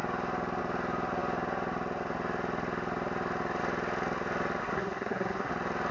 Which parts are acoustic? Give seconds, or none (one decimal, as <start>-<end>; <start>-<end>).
0.0-4.6; 5.5-5.9